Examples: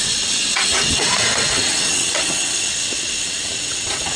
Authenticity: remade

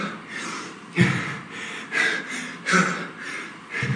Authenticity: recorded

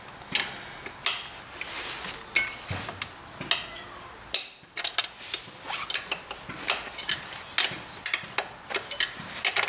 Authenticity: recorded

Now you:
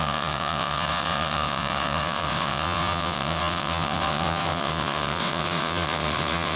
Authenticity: remade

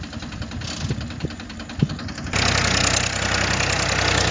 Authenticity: recorded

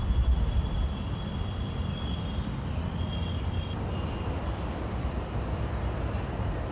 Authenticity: recorded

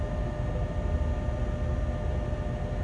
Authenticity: recorded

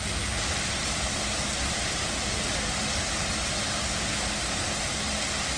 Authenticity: recorded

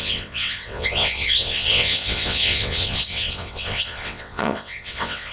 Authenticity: remade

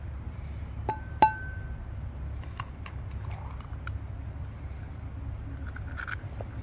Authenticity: recorded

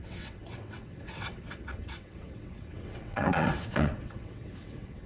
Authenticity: remade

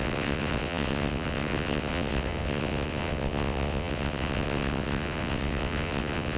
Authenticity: remade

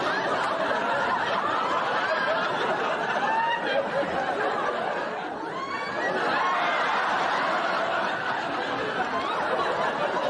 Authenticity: recorded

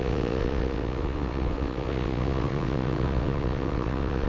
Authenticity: remade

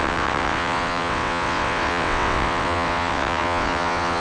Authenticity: remade